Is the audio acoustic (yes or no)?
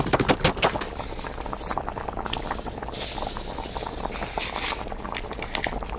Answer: yes